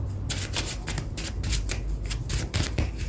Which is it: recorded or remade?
remade